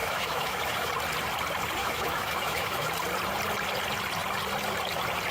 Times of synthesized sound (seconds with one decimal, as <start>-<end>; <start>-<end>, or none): 0.0-0.9; 1.8-2.9